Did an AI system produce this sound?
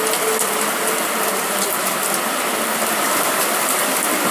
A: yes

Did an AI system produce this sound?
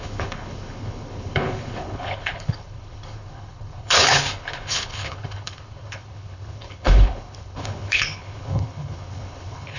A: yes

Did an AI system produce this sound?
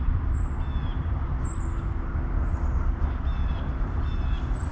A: no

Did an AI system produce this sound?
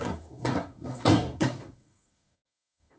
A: yes